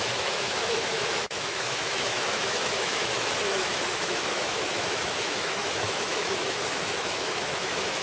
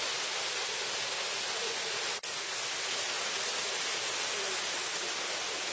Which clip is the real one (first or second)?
second